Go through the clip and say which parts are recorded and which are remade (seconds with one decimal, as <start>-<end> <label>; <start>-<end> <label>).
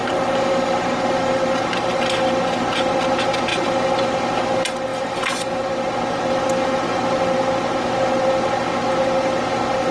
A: 0.0-3.5 recorded; 3.5-4.1 remade; 4.1-4.9 recorded; 4.9-5.7 remade; 5.7-9.9 recorded